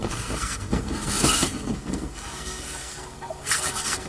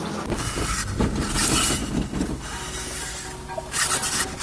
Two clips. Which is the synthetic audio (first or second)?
first